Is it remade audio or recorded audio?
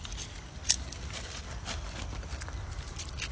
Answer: recorded